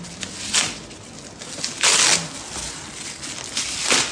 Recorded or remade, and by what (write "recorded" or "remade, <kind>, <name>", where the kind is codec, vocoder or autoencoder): recorded